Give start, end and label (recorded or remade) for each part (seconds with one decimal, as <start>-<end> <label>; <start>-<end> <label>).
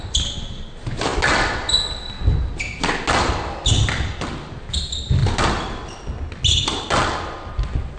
0.0-8.0 recorded